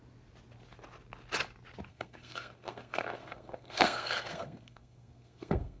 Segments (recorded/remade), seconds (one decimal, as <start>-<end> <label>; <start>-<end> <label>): 0.0-1.9 recorded; 1.9-5.8 remade